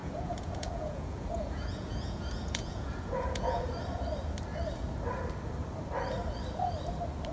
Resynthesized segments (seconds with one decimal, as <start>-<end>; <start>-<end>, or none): 0.0-3.6